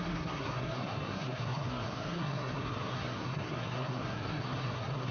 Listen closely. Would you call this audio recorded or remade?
remade